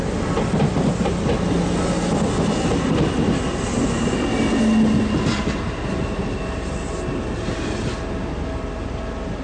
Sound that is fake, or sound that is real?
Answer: real